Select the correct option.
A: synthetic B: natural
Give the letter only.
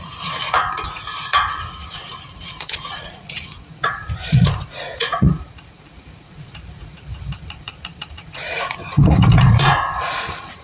A